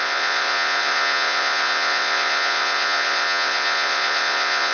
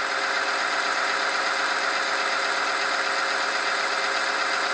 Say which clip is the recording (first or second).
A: second